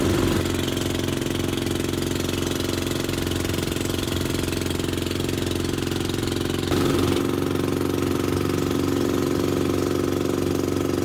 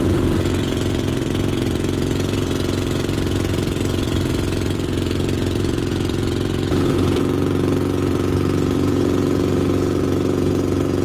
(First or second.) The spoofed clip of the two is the second